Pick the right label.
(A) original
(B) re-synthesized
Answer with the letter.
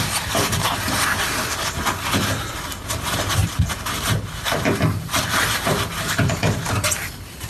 B